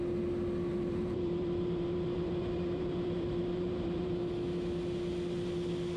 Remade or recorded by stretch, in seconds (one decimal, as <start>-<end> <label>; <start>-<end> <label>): 0.0-0.7 recorded; 0.7-4.3 remade; 4.3-6.0 recorded